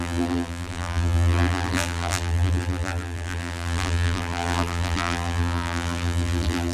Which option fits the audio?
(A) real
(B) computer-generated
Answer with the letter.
B